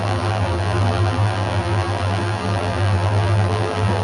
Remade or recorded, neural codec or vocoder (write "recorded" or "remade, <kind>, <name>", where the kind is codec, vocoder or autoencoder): remade, vocoder, BigVGAN v2